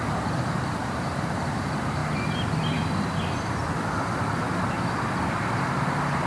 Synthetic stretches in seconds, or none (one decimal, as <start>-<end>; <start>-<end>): 0.0-2.0; 5.7-6.3